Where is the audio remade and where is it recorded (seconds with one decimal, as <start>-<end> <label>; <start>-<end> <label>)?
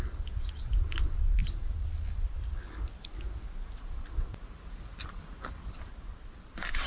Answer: 0.0-5.9 recorded; 5.9-6.9 remade